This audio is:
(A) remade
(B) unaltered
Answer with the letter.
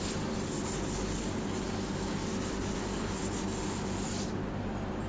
B